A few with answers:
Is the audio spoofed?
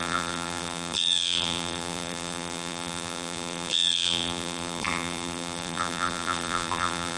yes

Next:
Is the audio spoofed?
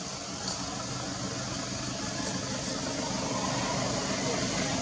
no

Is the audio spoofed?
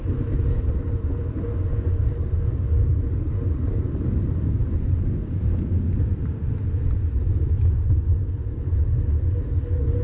no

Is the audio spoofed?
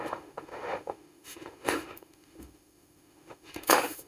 yes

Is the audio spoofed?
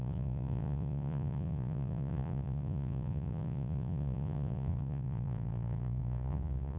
yes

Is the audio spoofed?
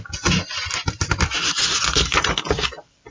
no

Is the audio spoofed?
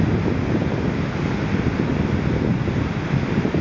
no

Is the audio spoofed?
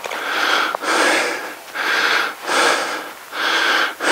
no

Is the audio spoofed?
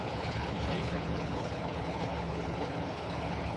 yes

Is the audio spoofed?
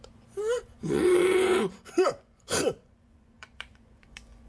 yes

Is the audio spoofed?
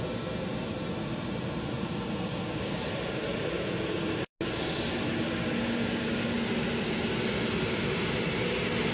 no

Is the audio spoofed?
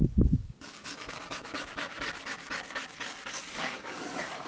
yes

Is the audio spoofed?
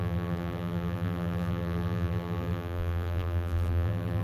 yes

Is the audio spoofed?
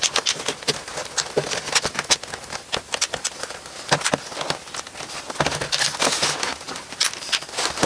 no